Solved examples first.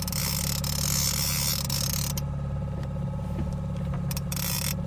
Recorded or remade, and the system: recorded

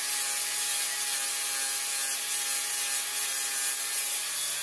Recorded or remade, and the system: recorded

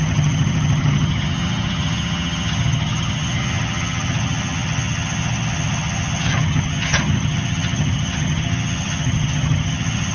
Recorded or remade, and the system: remade, vocoder, HiFi-GAN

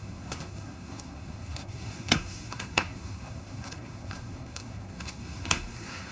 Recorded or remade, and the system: remade, codec, SNAC